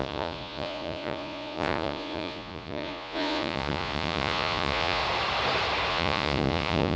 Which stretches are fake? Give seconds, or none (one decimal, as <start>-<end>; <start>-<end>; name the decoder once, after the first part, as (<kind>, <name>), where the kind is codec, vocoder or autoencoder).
0.0-5.0 (vocoder, Vocos); 5.9-7.0

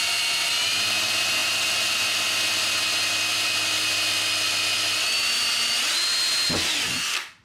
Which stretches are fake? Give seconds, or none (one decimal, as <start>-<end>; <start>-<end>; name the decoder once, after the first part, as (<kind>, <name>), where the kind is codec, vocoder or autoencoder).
none